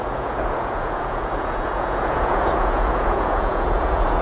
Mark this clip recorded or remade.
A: remade